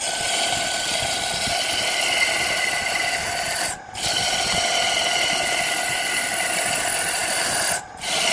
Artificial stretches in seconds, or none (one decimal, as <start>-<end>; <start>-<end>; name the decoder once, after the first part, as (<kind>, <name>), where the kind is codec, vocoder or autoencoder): none